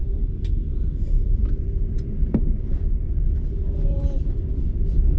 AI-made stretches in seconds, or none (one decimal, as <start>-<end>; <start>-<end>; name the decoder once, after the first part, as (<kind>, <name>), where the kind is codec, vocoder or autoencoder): 0.0-3.1 (vocoder, BigVGAN v2); 3.6-4.5